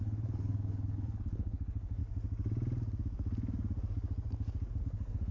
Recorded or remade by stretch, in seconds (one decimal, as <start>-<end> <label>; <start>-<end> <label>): 0.0-2.0 remade; 2.0-4.8 recorded; 4.8-5.3 remade